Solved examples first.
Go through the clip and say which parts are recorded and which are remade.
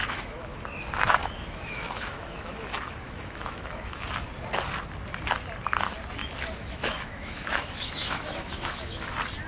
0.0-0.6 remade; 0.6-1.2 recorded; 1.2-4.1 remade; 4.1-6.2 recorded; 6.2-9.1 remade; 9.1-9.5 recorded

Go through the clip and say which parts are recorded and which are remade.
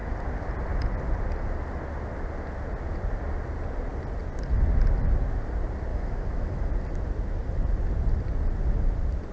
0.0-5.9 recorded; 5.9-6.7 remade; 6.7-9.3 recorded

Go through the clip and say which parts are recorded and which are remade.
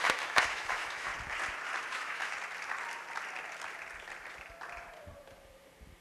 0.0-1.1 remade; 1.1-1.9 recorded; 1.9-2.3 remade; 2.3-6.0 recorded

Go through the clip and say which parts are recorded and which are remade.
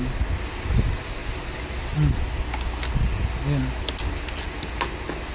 0.0-5.3 recorded